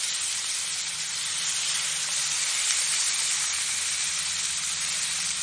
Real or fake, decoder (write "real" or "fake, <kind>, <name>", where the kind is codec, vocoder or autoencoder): fake, vocoder, BigVGAN v2